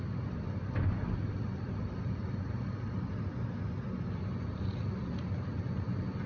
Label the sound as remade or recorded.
recorded